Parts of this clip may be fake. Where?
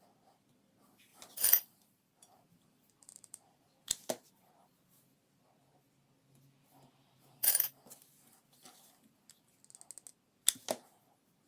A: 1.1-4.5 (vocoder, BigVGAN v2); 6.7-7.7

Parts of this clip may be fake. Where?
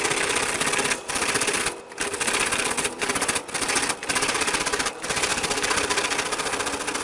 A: 0.0-7.0 (vocoder, BigVGAN v2)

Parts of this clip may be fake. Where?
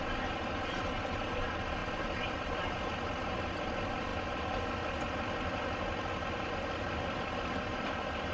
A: 0.0-1.8 (vocoder, BigVGAN v2); 2.3-4.1; 6.5-8.3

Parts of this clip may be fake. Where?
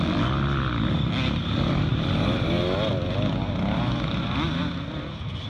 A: none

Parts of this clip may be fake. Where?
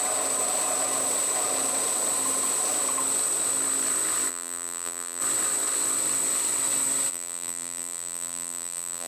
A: 4.3-5.2 (vocoder, BigVGAN v2); 7.1-9.1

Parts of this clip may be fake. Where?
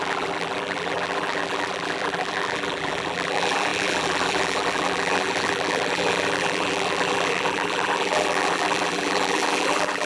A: 0.0-10.1 (vocoder, BigVGAN v2)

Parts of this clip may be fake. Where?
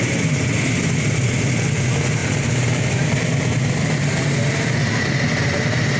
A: 2.2-3.3 (vocoder, BigVGAN v2)